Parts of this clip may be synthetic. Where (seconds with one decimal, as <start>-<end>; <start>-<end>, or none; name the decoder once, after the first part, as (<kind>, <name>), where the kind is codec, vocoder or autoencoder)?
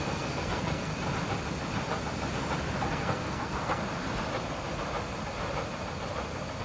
0.0-0.9 (codec, SNAC); 2.9-3.8